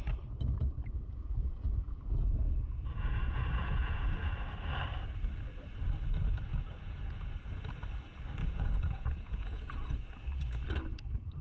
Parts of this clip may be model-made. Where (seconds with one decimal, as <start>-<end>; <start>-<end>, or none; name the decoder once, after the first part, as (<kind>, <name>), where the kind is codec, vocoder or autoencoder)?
1.1-4.3 (vocoder, Vocos); 6.5-7.5; 8.4-10.1